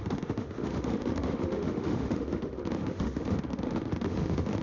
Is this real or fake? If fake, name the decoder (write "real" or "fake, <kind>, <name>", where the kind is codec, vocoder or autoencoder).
fake, autoencoder, DAC-VAE